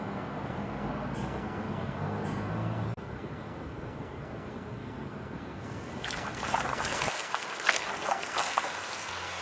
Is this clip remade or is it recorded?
remade